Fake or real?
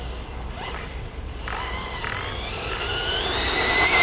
real